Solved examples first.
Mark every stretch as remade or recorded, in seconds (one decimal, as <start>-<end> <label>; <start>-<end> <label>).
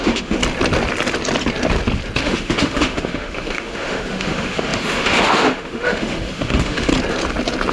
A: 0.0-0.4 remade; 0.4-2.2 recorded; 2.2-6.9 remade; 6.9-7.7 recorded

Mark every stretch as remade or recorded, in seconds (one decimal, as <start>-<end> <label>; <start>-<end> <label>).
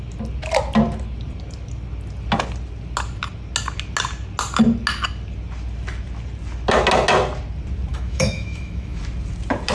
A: 0.0-7.9 recorded; 7.9-9.0 remade; 9.0-9.7 recorded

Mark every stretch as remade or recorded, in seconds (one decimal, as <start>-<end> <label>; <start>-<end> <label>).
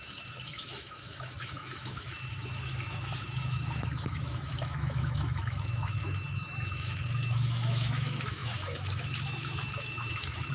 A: 0.0-10.5 remade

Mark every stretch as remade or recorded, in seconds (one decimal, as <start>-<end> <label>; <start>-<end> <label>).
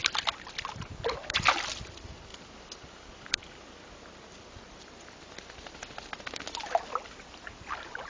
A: 0.0-8.1 recorded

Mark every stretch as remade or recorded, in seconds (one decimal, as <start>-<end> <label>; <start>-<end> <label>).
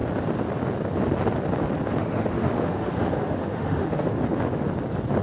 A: 0.0-2.0 recorded; 2.0-4.2 remade; 4.2-5.2 recorded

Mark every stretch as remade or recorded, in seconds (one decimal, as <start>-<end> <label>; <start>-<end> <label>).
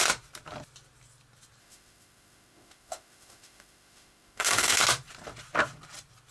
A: 0.0-1.6 recorded; 1.6-4.8 remade; 4.8-6.3 recorded